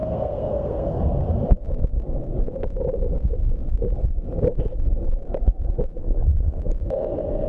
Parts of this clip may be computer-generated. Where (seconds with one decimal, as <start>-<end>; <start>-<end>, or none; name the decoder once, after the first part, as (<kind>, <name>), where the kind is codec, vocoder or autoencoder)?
0.0-1.0 (codec, SNAC); 6.0-6.6